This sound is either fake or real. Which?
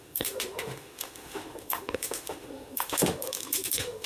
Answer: fake